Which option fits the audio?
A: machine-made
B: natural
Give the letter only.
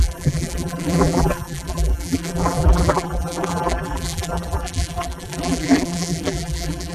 A